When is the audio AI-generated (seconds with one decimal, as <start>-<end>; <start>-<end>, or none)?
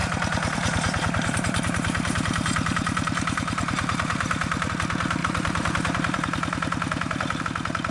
0.0-4.7; 5.2-7.4